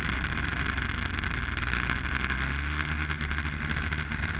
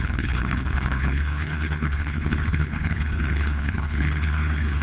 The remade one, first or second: second